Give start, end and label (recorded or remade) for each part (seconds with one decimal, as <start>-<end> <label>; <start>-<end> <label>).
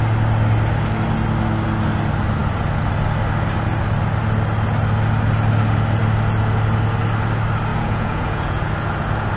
0.0-7.7 recorded; 7.7-8.7 remade; 8.7-9.4 recorded